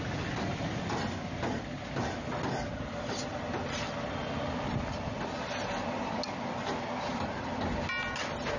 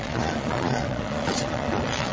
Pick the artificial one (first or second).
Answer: second